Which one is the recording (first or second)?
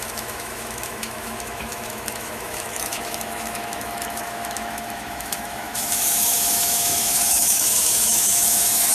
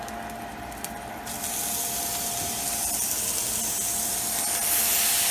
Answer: second